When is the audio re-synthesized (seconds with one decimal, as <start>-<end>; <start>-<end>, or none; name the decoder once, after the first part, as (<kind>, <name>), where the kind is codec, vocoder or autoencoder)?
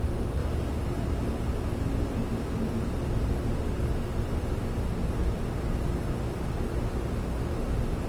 5.2-6.8 (vocoder, BigVGAN v2)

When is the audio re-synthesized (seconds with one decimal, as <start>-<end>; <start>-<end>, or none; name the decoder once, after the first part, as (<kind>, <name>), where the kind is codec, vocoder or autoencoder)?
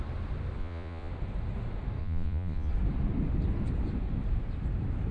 0.6-1.1 (vocoder, Vocos); 2.0-2.7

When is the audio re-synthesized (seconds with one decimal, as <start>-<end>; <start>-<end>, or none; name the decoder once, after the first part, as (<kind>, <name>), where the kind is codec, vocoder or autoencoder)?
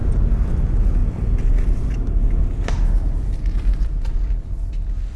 none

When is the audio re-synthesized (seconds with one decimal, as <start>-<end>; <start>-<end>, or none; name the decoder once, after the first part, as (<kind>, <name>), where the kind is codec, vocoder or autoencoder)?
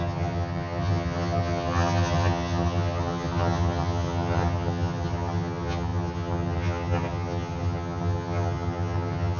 0.0-9.4 (vocoder, HiFi-GAN)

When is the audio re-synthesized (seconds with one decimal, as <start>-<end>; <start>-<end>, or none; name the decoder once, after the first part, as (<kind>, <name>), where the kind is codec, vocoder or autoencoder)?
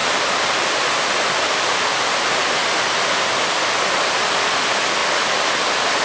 none